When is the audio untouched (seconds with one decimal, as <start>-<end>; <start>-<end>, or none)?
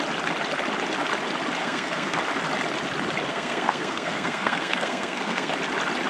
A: 0.0-1.6; 2.2-3.3; 5.5-6.1